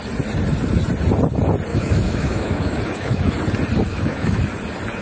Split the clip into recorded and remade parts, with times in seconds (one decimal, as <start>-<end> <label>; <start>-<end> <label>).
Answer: 0.0-1.7 recorded; 1.7-3.3 remade; 3.3-3.9 recorded; 3.9-4.4 remade; 4.4-5.0 recorded